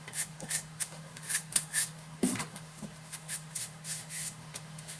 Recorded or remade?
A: remade